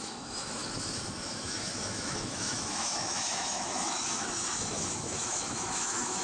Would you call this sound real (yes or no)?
no